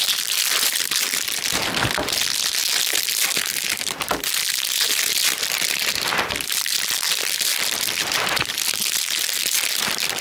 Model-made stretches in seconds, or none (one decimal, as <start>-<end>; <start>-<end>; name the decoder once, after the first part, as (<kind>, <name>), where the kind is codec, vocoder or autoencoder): 0.0-2.6 (vocoder, BigVGAN v2); 3.6-10.2